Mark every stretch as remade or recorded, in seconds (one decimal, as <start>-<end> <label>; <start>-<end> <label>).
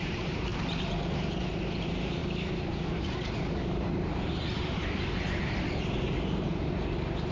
0.0-0.5 remade; 0.5-1.8 recorded; 1.8-2.2 remade; 2.2-5.7 recorded; 5.7-6.5 remade; 6.5-7.3 recorded